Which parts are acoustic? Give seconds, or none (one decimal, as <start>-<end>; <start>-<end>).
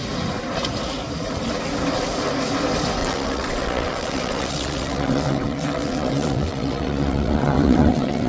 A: 0.0-3.0